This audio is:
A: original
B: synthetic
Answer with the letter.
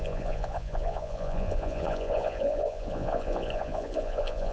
B